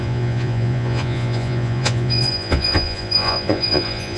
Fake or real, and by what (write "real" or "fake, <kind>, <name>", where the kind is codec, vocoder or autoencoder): fake, vocoder, Vocos